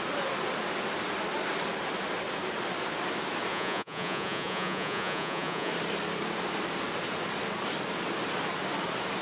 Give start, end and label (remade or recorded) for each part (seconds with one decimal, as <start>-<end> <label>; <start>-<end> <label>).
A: 0.0-3.5 recorded; 3.5-5.7 remade; 5.7-9.2 recorded